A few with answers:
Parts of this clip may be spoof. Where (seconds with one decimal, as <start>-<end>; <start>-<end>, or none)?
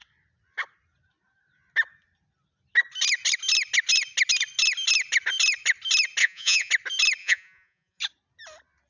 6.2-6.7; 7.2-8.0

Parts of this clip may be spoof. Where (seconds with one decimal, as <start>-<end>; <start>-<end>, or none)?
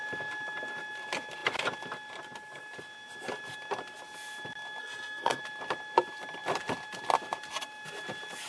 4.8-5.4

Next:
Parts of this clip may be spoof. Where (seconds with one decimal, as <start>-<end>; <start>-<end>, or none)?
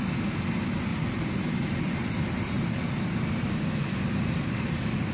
0.9-2.9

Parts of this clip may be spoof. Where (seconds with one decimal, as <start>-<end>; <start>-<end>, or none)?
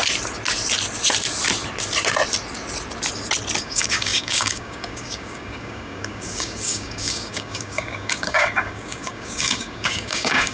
3.6-10.5